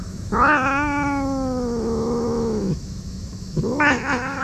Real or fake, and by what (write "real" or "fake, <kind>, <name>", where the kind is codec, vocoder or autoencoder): fake, autoencoder, DAC-VAE